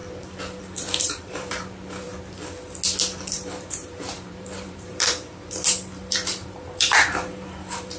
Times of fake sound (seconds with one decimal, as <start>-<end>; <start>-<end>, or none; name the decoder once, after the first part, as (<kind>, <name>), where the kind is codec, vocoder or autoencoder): 0.6-2.1 (vocoder, BigVGAN v2); 3.2-8.0